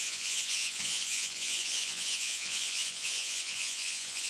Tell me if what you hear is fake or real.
fake